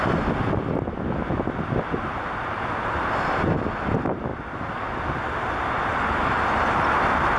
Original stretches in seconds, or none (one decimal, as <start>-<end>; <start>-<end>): 0.0-7.4